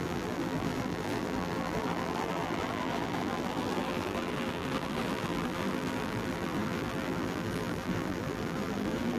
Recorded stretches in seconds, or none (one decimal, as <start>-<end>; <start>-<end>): none

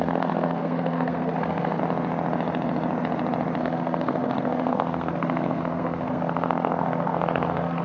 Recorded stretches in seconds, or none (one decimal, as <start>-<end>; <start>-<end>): 1.8-3.6

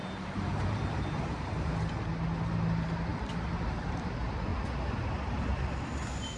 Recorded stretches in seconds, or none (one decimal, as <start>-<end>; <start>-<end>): 1.9-6.4

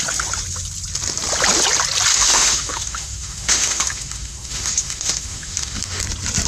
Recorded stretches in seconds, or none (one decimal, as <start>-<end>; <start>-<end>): 0.0-2.1; 6.0-6.5

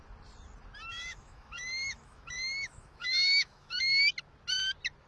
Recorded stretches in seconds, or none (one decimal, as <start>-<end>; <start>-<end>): 0.0-0.9; 4.0-5.1

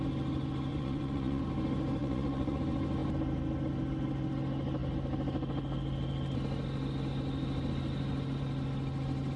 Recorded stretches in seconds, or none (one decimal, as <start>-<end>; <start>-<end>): 0.0-0.7; 1.4-2.0; 2.6-9.4

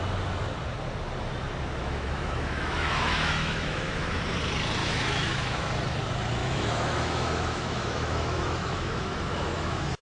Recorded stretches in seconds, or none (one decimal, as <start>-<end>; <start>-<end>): 0.0-1.8; 4.2-4.8; 5.7-6.4